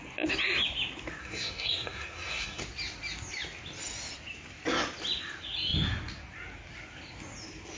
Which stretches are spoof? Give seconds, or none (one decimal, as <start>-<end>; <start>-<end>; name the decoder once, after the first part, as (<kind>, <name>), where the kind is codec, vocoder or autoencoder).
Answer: 1.2-2.6 (codec, SNAC)